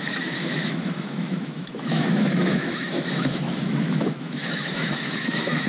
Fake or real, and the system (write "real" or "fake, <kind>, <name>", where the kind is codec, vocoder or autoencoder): fake, autoencoder, DAC-VAE